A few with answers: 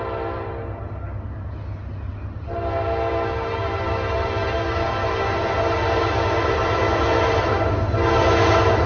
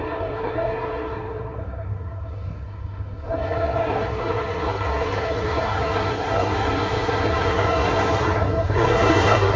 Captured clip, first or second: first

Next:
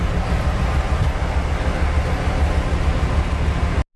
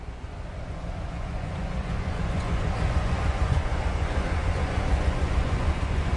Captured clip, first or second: first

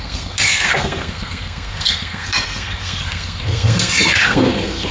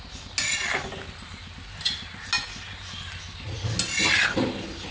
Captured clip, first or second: second